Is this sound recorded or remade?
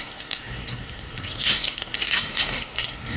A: remade